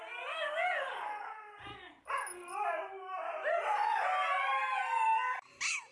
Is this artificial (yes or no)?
no